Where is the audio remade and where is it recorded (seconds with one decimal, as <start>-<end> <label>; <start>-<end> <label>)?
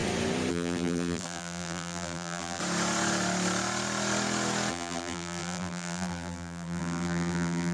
0.0-0.5 recorded; 0.5-2.6 remade; 2.6-4.7 recorded; 4.7-7.7 remade